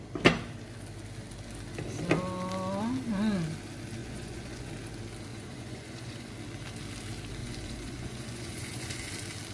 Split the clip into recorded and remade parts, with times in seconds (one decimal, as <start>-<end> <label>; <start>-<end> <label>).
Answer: 0.0-4.0 recorded; 4.0-4.7 remade; 4.7-5.3 recorded; 5.3-6.3 remade; 6.3-7.4 recorded; 7.4-9.1 remade; 9.1-9.5 recorded